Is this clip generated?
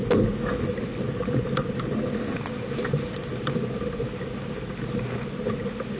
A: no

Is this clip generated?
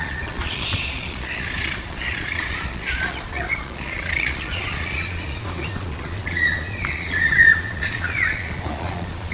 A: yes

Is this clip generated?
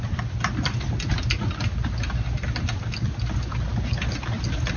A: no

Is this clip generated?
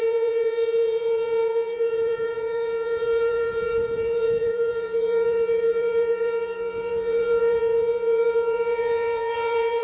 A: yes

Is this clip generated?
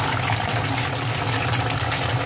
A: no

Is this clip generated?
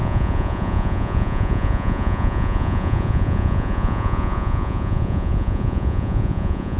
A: yes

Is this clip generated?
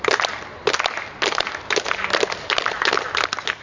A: no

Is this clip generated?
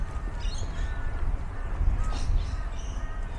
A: no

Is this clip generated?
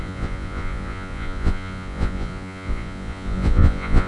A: yes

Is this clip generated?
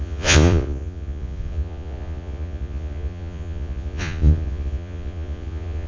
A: yes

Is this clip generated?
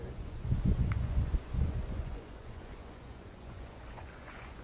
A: yes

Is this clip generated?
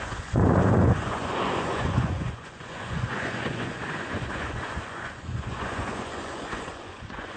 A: yes